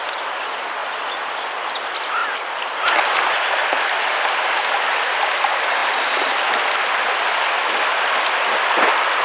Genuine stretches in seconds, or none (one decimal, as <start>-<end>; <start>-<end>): 0.0-2.2; 3.6-5.8; 6.3-9.2